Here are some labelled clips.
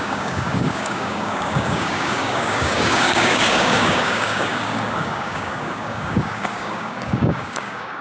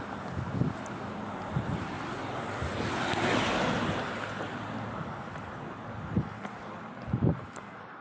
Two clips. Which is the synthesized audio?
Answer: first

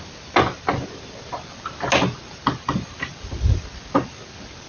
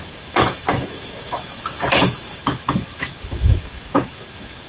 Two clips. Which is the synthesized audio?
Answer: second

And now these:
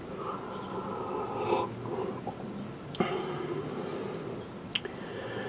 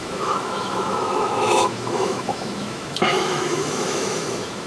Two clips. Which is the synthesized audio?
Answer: second